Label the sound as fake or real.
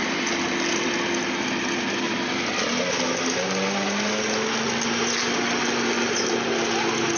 real